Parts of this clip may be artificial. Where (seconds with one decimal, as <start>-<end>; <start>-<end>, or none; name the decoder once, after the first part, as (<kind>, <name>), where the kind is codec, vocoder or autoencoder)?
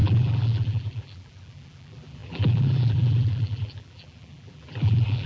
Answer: 0.0-5.3 (vocoder, BigVGAN v2)